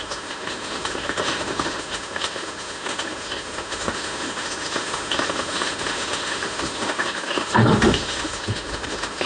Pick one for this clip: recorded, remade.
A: remade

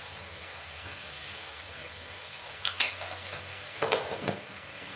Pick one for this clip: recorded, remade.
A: remade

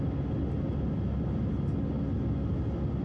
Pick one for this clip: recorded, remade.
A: recorded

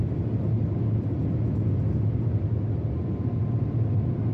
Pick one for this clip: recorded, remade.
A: recorded